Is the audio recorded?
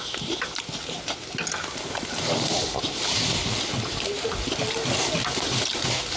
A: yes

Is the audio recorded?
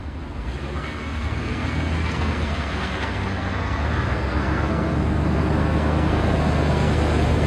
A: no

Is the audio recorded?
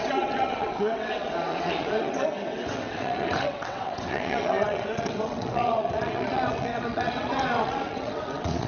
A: no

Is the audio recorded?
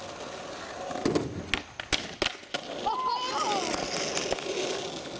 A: yes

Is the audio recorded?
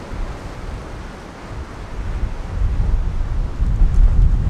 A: yes